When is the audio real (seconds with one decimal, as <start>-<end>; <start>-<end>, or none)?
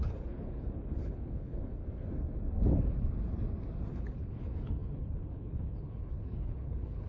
1.8-3.9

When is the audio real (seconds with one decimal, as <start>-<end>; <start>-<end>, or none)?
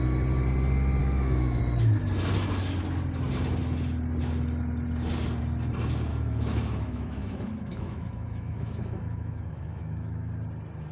0.0-1.0; 1.6-6.1; 10.3-10.9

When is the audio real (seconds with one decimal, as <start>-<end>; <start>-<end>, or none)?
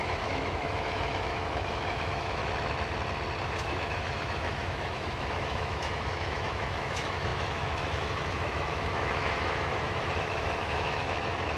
2.4-3.4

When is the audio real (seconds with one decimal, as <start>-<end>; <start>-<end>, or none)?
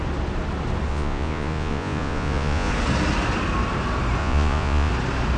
0.0-0.9; 2.7-4.2; 4.9-5.4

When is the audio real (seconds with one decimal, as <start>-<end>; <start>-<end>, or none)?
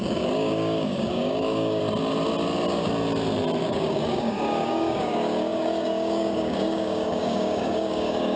1.8-3.6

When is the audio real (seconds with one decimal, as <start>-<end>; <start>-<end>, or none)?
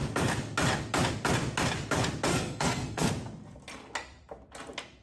0.0-2.3; 3.1-5.0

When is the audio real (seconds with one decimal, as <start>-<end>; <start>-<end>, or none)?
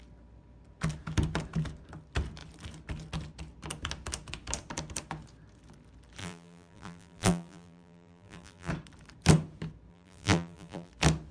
0.0-6.2; 8.7-9.9; 10.9-11.3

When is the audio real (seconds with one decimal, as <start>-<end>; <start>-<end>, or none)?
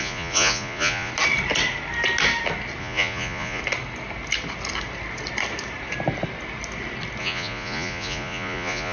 1.1-2.8; 3.6-7.2